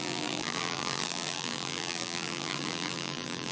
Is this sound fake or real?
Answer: fake